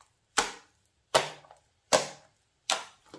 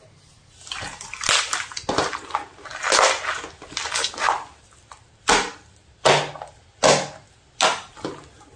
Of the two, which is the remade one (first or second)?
first